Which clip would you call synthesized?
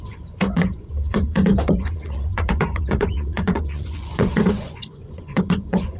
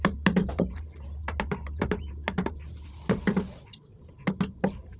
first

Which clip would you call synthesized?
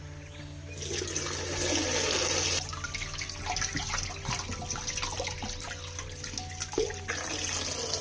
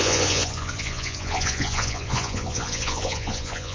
second